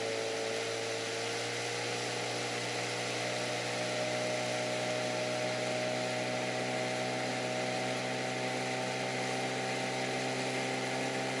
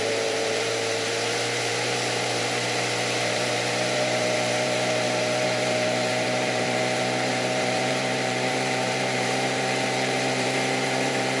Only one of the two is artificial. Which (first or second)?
second